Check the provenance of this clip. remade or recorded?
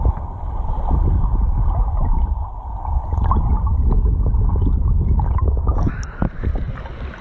recorded